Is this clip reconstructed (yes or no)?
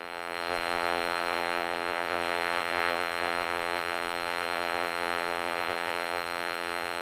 yes